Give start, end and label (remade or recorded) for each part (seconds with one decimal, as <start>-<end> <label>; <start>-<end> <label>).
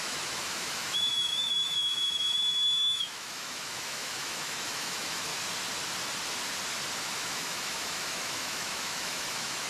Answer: 0.0-5.3 remade; 5.3-7.0 recorded; 7.0-9.7 remade